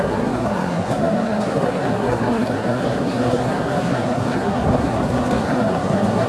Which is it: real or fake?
fake